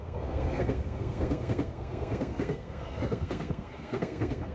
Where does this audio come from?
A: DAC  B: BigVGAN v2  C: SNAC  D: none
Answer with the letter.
C